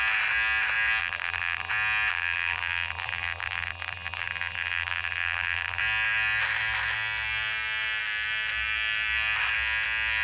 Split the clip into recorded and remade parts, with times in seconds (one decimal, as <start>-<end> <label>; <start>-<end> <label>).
0.0-1.0 recorded; 1.0-1.7 remade; 1.7-2.1 recorded; 2.1-5.8 remade; 5.8-10.2 recorded